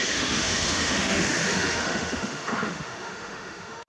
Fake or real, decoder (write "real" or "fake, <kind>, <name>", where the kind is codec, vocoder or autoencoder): fake, autoencoder, DAC-VAE